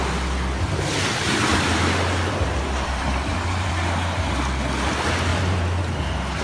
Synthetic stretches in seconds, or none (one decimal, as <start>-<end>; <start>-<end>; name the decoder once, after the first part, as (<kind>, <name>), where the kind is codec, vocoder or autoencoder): 1.5-3.7 (vocoder, BigVGAN v2); 5.3-6.0